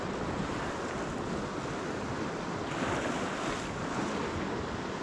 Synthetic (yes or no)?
no